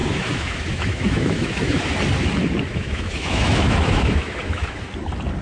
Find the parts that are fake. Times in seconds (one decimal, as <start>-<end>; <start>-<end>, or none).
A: 0.0-1.8; 2.7-4.9